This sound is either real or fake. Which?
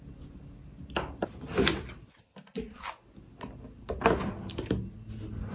real